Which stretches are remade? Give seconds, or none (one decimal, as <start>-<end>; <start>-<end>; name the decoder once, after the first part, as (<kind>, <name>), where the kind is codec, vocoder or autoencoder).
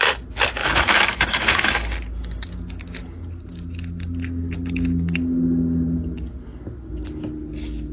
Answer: 0.6-1.8 (autoencoder, DAC-VAE)